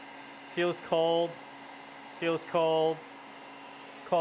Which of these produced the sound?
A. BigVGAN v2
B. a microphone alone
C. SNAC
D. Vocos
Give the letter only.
B